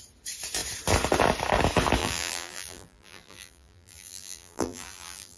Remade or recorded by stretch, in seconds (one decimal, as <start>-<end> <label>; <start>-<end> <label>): 0.0-2.0 recorded; 2.0-5.4 remade